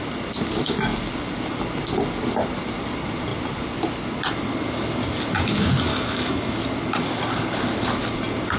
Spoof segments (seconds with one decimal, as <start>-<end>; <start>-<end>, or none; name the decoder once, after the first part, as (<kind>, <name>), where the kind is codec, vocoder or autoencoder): 5.9-6.5 (autoencoder, DAC-VAE)